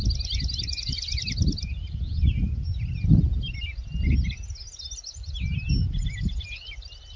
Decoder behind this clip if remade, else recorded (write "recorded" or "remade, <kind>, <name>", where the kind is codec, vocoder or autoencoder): recorded